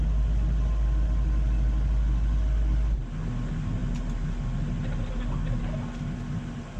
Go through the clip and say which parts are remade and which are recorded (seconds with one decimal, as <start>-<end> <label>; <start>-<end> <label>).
0.0-6.8 recorded